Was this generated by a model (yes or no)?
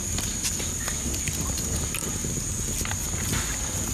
no